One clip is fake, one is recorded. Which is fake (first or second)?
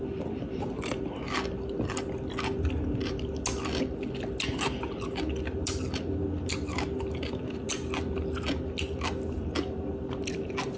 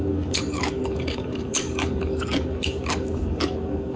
second